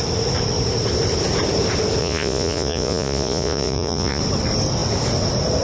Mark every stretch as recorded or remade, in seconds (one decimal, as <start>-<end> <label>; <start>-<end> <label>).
0.0-2.0 recorded; 2.0-4.2 remade; 4.2-5.6 recorded